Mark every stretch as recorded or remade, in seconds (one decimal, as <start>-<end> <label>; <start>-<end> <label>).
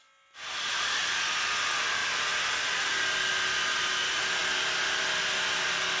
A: 0.0-6.0 recorded